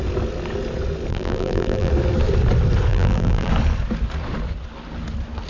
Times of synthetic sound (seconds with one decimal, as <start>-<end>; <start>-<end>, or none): 1.1-1.9; 2.9-3.5